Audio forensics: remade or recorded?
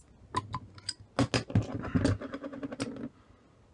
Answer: recorded